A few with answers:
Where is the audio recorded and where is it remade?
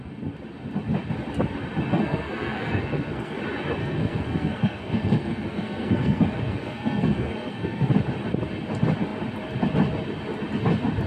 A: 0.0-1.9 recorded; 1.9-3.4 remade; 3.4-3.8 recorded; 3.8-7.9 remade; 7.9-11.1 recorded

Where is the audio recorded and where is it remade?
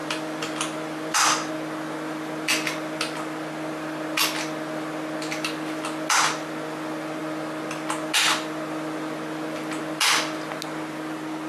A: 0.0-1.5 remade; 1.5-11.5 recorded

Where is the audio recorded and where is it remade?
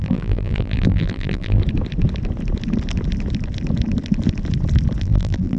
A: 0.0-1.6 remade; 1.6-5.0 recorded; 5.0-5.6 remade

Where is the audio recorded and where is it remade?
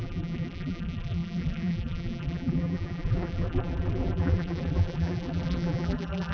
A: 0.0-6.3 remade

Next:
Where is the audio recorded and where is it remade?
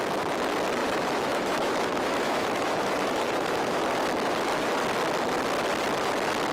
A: 0.0-0.8 recorded; 0.8-3.8 remade; 3.8-6.5 recorded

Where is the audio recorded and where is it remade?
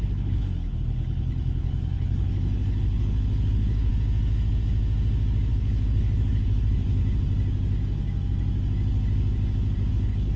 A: 0.0-3.9 remade; 3.9-5.5 recorded; 5.5-7.0 remade; 7.0-9.9 recorded; 9.9-10.4 remade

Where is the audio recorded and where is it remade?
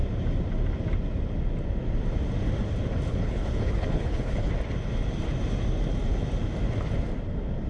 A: 0.0-3.1 recorded; 3.1-4.5 remade; 4.5-7.7 recorded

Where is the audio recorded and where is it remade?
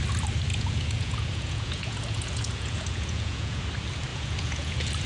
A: 0.0-0.5 recorded; 0.5-3.6 remade; 3.6-4.1 recorded; 4.1-5.1 remade